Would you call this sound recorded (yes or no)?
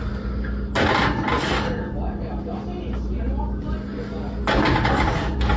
yes